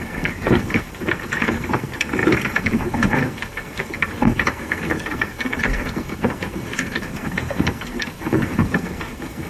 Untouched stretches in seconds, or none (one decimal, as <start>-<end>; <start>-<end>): none